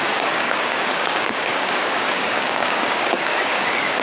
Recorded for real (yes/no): no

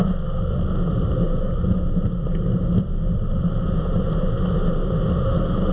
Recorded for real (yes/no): yes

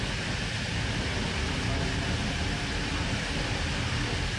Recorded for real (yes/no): yes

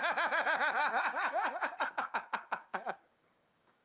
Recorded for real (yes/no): no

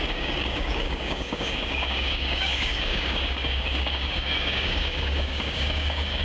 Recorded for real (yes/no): no